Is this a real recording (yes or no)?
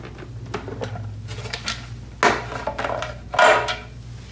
yes